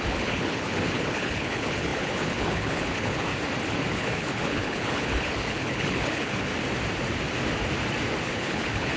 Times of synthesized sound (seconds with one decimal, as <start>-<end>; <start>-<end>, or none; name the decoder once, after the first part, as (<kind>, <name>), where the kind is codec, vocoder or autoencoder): 0.0-3.3 (codec, HILCodec); 3.9-6.5; 8.2-9.0